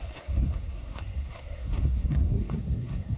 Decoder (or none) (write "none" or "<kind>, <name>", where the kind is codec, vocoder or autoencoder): codec, SNAC